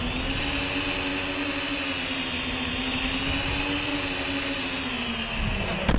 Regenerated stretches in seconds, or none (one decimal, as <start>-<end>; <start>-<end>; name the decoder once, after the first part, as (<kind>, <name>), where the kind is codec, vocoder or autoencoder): none